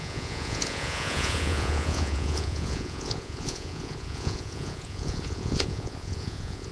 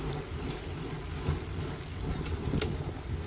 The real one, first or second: second